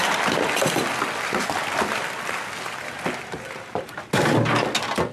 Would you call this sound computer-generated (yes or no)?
no